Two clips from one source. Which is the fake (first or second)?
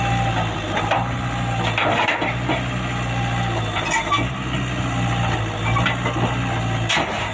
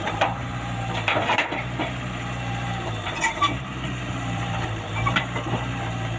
second